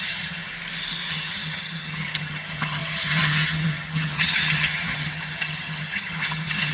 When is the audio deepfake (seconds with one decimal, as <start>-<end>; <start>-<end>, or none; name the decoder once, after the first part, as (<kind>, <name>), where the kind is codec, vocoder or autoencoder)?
0.0-0.5 (vocoder, HiFi-GAN); 1.1-6.7